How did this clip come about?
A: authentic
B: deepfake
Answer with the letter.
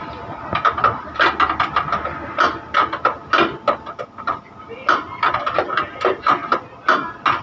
A